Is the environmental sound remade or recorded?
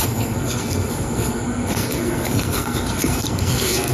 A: remade